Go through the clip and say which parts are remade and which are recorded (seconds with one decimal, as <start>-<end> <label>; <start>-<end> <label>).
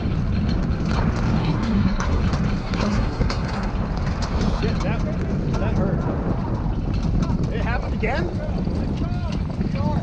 0.0-1.4 recorded; 1.4-2.2 remade; 2.2-2.6 recorded; 2.6-3.7 remade; 3.7-10.0 recorded